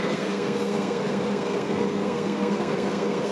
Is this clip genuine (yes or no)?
no